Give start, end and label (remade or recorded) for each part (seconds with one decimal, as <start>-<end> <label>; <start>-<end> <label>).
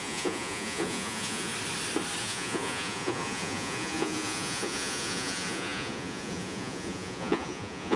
0.0-1.5 remade; 1.5-2.2 recorded; 2.2-8.0 remade